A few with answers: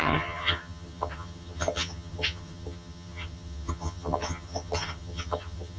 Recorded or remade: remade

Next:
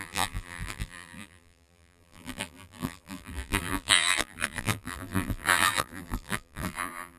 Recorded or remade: remade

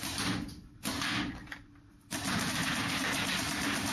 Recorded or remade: recorded